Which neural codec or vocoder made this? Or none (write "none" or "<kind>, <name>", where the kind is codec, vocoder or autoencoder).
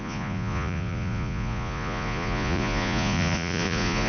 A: vocoder, Vocos